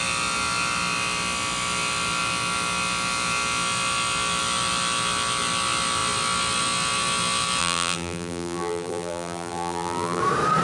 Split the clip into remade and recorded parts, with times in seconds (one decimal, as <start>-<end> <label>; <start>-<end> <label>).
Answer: 0.0-7.6 recorded; 7.6-10.2 remade; 10.2-10.6 recorded